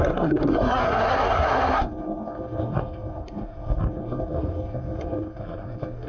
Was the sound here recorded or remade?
remade